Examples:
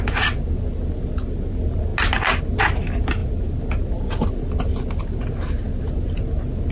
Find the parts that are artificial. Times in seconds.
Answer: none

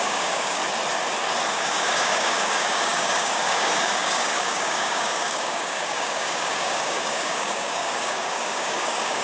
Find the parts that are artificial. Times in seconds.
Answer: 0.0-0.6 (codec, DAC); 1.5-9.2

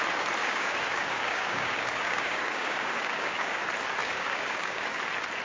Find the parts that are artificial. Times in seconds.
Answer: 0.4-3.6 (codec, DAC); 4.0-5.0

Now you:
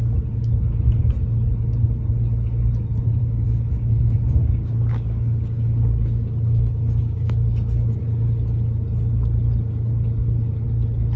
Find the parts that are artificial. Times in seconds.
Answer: 3.2-8.0 (codec, DAC)

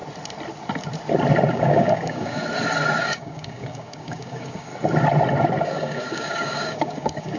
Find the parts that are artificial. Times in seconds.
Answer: 1.5-2.4 (codec, DAC); 3.0-4.7; 5.6-7.4

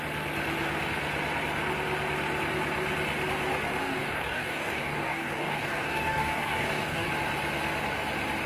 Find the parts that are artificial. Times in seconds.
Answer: 3.8-7.1 (codec, DAC)

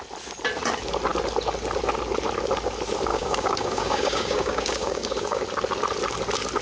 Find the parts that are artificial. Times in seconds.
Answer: 3.1-5.4 (codec, DAC)